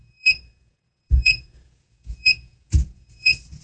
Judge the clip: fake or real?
fake